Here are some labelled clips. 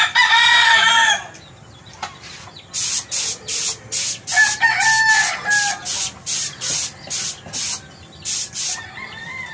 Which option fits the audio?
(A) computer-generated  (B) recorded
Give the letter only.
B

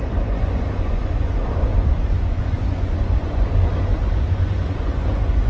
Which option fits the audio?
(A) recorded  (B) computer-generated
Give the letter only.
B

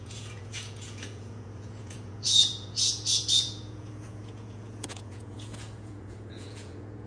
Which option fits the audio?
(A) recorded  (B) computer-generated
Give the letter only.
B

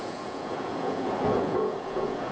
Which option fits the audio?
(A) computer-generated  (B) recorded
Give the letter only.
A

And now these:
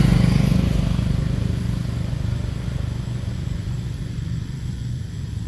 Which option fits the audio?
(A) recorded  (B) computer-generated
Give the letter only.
B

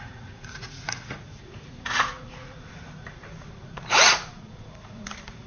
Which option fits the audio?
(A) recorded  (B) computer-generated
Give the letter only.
B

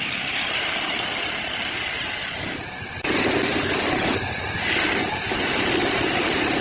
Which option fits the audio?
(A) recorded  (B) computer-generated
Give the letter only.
A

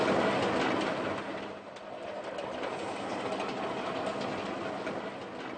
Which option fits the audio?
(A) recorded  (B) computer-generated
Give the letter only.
A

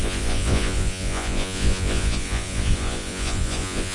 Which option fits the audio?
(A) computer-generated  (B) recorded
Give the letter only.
A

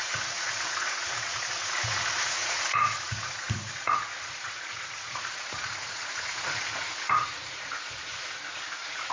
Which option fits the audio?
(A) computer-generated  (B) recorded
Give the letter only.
A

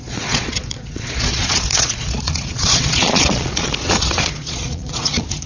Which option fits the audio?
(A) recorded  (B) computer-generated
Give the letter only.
B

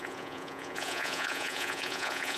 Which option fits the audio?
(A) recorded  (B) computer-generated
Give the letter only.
B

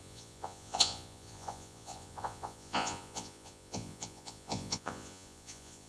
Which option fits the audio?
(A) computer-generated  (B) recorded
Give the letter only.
A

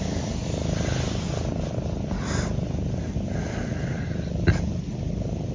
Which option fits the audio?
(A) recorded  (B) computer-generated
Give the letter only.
A